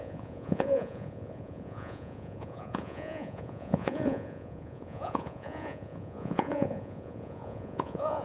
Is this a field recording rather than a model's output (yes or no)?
no